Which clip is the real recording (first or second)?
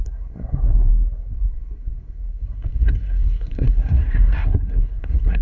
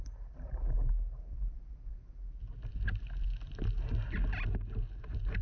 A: second